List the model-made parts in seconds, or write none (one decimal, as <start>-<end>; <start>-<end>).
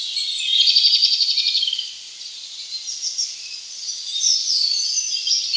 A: 0.0-5.6